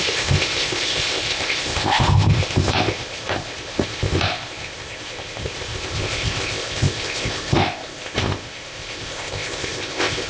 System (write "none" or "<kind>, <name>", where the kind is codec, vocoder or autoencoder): codec, ZipCodec